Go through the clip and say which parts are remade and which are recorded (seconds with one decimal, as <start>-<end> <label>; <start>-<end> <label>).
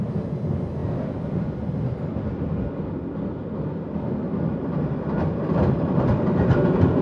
0.0-7.0 recorded